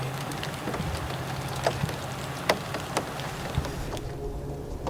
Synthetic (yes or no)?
no